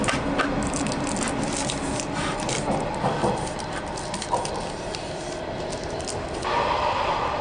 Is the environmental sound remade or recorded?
recorded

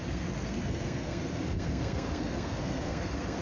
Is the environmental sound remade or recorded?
remade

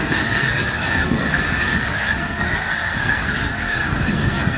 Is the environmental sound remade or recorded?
remade